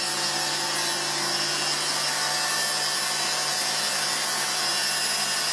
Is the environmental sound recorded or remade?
recorded